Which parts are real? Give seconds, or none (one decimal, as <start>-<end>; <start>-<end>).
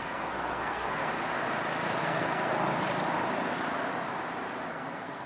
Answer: 1.1-2.0; 2.5-4.7